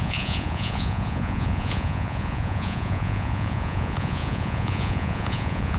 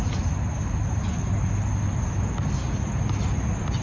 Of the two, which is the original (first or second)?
second